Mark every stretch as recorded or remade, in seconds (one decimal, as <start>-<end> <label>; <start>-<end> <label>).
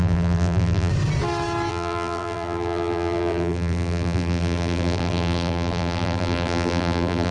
0.0-0.9 remade; 0.9-1.7 recorded; 1.7-7.3 remade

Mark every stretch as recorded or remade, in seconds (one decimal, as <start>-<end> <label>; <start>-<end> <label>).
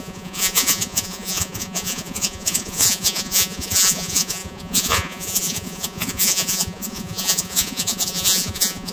0.0-8.9 remade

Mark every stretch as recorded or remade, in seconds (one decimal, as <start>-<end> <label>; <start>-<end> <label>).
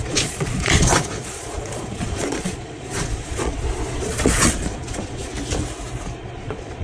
0.0-5.3 remade; 5.3-6.2 recorded; 6.2-6.8 remade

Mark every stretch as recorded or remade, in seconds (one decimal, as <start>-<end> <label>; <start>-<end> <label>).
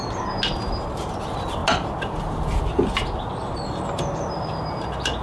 0.0-5.2 recorded